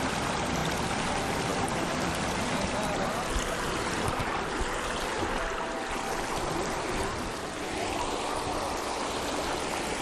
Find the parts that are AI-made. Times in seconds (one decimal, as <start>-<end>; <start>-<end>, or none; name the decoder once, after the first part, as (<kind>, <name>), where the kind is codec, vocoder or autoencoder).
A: none